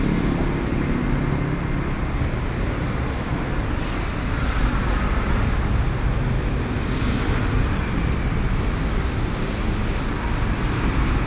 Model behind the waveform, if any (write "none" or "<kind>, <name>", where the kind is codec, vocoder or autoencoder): none